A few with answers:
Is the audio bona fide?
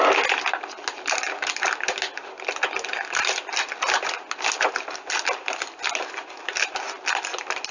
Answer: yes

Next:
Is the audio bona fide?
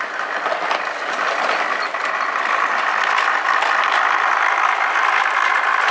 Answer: yes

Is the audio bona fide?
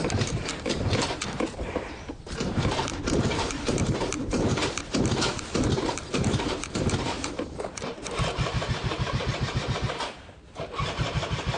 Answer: no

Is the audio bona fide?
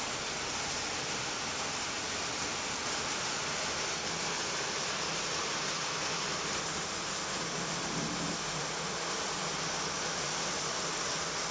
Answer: yes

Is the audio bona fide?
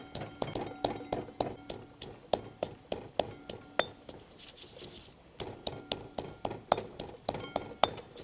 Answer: yes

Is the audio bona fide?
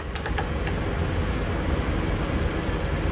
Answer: yes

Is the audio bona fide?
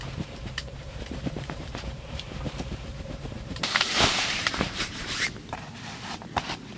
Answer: no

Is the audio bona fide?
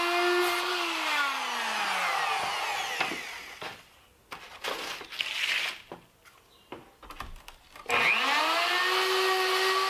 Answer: yes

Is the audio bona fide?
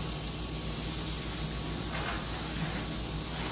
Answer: yes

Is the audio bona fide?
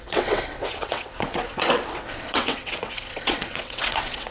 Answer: no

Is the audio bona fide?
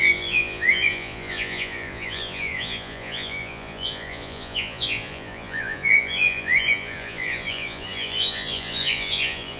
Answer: no